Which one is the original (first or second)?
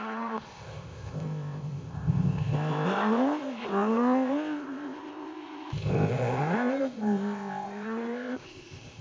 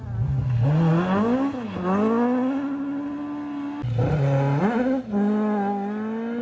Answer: second